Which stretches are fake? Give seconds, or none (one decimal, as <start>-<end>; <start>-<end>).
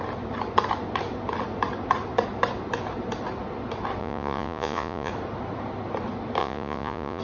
4.0-5.1; 6.4-7.2